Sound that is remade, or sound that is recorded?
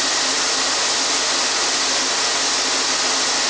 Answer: recorded